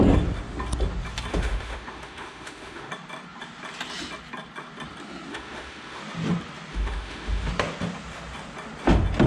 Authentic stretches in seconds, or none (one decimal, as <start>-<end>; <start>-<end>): 0.0-1.3; 2.9-5.3; 6.0-6.7; 7.5-9.3